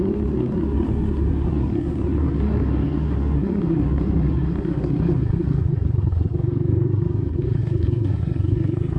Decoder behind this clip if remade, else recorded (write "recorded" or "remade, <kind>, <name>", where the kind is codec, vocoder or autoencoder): remade, codec, SNAC